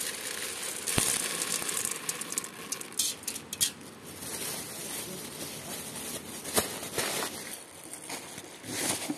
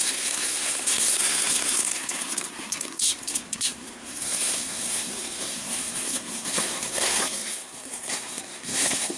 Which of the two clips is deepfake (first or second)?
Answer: second